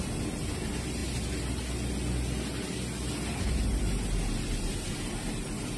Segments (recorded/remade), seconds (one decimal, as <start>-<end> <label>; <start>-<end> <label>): 0.0-5.8 recorded